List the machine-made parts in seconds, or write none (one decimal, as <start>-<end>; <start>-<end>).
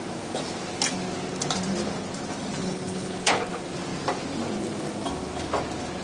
2.6-3.4